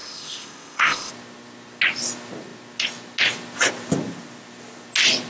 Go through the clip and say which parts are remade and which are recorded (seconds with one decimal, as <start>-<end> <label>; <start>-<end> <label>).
0.0-1.1 remade; 1.1-5.3 recorded

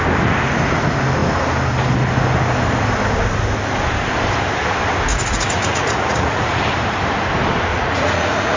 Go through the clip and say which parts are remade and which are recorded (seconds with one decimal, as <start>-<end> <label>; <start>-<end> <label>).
0.0-5.1 recorded; 5.1-6.6 remade; 6.6-7.7 recorded; 7.7-8.6 remade

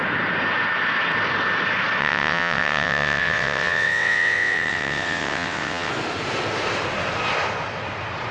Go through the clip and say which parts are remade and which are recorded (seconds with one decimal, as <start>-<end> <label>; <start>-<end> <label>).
0.0-2.0 recorded; 2.0-5.9 remade; 5.9-8.3 recorded

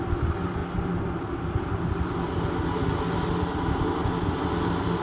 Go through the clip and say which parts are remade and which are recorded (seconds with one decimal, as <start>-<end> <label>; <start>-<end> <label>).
0.0-5.0 recorded

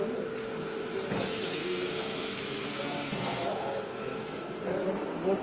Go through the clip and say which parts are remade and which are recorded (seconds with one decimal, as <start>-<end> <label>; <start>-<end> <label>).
0.0-1.4 recorded; 1.4-4.6 remade; 4.6-5.4 recorded

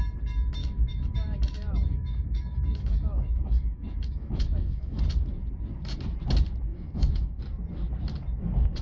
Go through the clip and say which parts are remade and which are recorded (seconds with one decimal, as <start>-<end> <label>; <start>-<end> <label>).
0.0-0.6 recorded; 0.6-5.0 remade; 5.0-6.7 recorded; 6.7-7.4 remade; 7.4-8.8 recorded

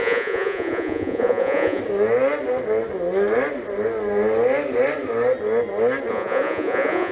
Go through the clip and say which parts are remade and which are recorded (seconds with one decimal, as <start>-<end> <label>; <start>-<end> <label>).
0.0-1.8 remade; 1.8-6.1 recorded; 6.1-7.1 remade

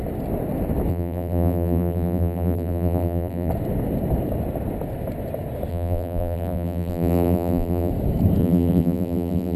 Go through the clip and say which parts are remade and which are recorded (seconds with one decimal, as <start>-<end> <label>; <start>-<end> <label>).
0.0-0.9 recorded; 0.9-3.5 remade; 3.5-5.7 recorded; 5.7-7.9 remade; 7.9-8.4 recorded; 8.4-9.6 remade